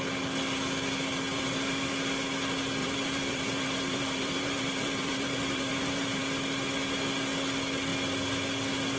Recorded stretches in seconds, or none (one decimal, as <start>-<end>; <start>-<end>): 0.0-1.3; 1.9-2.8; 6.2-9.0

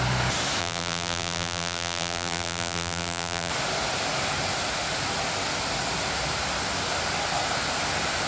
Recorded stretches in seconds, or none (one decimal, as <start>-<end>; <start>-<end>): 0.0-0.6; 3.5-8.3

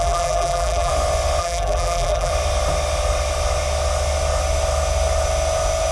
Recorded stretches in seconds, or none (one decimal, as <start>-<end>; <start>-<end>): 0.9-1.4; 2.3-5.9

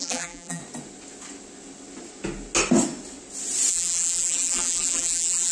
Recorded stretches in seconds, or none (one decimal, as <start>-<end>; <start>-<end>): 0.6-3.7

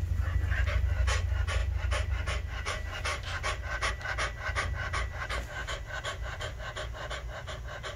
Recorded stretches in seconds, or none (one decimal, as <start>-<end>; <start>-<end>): 0.0-8.0

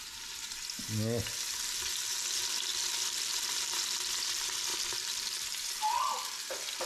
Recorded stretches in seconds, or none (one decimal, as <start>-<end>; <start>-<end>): 0.0-2.7; 3.9-4.7

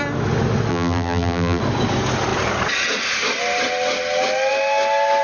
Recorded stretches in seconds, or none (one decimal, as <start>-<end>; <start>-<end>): 0.0-0.7; 1.6-5.2